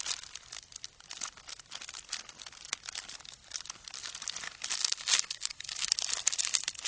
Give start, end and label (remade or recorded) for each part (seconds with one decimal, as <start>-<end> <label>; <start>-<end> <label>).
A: 0.0-4.8 recorded; 4.8-5.9 remade; 5.9-6.9 recorded